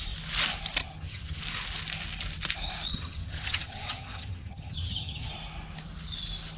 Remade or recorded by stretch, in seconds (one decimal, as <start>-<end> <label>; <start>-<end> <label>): 0.0-0.8 recorded; 0.8-1.4 remade; 1.4-2.9 recorded; 2.9-5.3 remade; 5.3-6.6 recorded